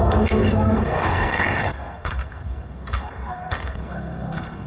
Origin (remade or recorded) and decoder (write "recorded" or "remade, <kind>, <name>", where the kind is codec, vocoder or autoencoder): remade, codec, SNAC